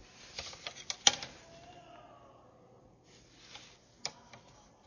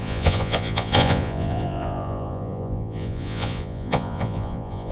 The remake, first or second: second